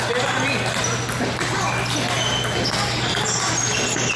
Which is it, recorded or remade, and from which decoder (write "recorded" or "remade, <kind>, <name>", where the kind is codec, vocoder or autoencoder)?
recorded